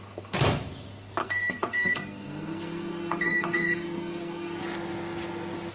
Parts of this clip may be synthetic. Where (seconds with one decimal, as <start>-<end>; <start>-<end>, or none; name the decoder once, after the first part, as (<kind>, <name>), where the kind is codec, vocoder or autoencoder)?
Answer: 1.2-4.6 (codec, SNAC)